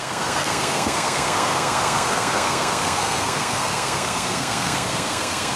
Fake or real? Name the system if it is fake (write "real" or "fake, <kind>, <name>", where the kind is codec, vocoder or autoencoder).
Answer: fake, codec, SNAC